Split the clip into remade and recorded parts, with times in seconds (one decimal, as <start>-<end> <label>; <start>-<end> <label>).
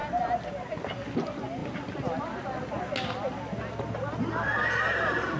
0.0-5.4 recorded